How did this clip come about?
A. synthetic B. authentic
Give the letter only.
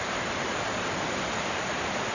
B